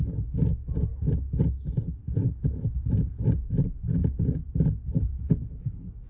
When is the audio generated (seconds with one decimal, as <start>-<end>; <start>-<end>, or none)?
4.0-5.2